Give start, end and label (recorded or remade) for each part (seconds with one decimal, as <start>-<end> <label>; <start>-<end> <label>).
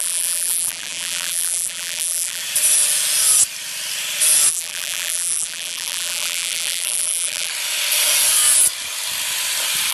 0.0-2.4 remade; 2.4-4.5 recorded; 4.5-7.5 remade; 7.5-9.9 recorded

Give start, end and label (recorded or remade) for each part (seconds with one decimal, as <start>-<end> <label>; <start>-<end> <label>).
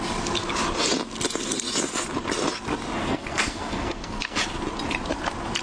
0.0-3.0 recorded; 3.0-4.4 remade; 4.4-5.6 recorded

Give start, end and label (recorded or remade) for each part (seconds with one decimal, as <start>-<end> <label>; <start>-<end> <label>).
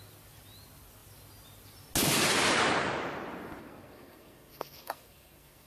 0.0-3.6 recorded; 3.6-5.7 remade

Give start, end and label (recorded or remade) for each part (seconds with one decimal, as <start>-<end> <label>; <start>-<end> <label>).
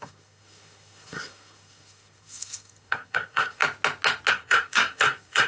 0.0-3.6 remade; 3.6-4.3 recorded; 4.3-5.5 remade